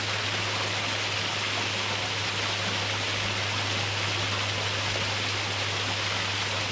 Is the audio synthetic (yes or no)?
no